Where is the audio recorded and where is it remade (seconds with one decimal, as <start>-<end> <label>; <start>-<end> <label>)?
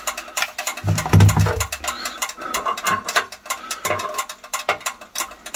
0.0-5.6 recorded